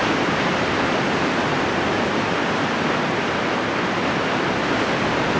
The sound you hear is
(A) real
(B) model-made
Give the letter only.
A